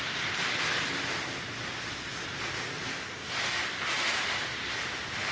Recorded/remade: recorded